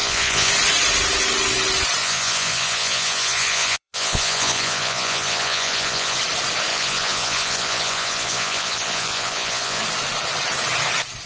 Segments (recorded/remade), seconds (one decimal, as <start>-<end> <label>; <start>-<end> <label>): 0.0-0.5 remade; 0.5-2.0 recorded; 2.0-6.2 remade; 6.2-6.7 recorded; 6.7-9.8 remade; 9.8-11.3 recorded